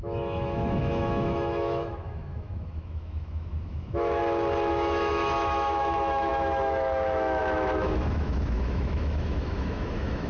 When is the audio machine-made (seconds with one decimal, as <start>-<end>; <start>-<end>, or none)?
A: 0.0-4.2; 4.7-10.3